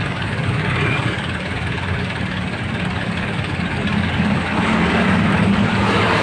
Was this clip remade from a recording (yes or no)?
yes